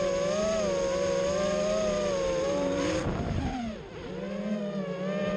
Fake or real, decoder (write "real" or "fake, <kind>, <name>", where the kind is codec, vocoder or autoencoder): real